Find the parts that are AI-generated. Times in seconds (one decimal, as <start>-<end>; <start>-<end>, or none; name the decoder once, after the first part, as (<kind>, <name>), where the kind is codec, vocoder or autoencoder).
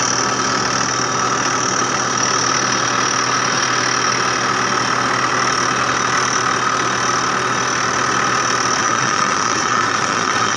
8.8-10.6 (vocoder, Vocos)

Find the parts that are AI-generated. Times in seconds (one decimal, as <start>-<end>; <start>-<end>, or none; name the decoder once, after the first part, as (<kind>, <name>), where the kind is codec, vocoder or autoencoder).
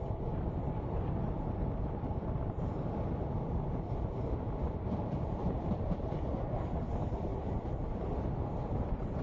none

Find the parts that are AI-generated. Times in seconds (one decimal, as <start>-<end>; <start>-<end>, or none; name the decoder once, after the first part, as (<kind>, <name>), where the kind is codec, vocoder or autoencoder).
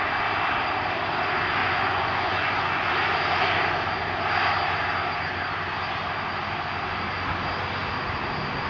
1.6-2.9 (vocoder, Vocos)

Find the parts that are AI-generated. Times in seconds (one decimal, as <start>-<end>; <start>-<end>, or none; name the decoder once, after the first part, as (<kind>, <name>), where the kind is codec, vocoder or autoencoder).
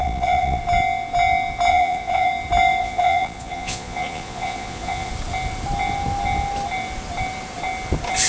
0.0-0.6 (vocoder, Vocos); 1.7-2.3; 2.8-5.1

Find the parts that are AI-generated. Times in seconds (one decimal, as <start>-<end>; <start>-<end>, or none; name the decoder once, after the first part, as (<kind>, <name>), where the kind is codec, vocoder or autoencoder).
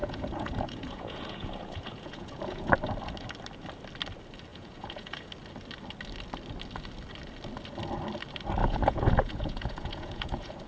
0.0-2.7 (vocoder, Vocos); 4.5-5.3; 8.6-10.7